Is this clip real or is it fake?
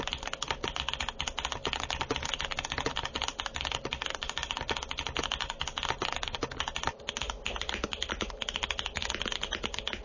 real